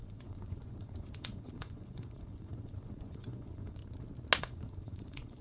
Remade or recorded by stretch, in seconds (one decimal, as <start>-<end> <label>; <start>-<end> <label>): 0.0-3.8 remade; 3.8-4.4 recorded; 4.4-5.4 remade